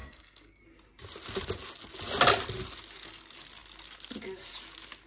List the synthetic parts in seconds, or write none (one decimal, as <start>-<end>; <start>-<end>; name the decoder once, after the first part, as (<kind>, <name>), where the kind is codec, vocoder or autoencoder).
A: 0.0-0.6 (codec, SNAC)